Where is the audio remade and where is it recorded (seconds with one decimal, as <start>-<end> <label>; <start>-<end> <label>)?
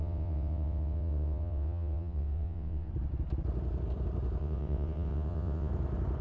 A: 0.0-2.9 remade; 2.9-4.4 recorded; 4.4-5.7 remade; 5.7-6.2 recorded